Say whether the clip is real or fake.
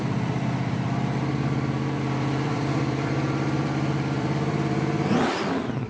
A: fake